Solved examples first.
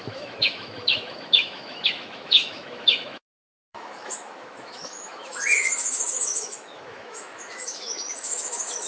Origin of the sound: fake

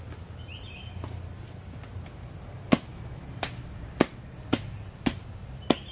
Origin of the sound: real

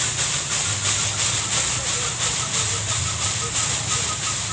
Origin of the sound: real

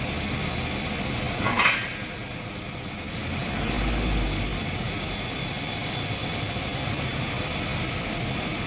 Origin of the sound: real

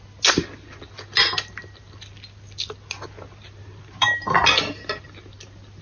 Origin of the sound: real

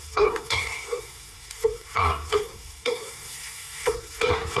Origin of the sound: fake